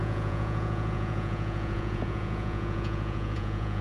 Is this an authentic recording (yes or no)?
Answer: no